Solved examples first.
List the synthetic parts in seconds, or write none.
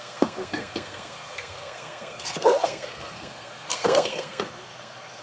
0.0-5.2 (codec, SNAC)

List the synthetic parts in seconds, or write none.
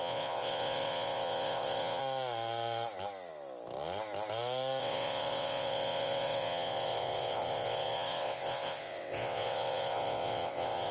0.0-2.0 (vocoder, WaveNeXt); 4.8-10.9